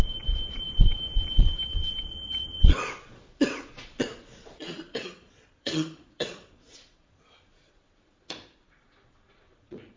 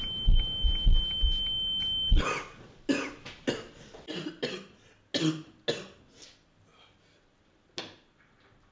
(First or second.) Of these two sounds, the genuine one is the second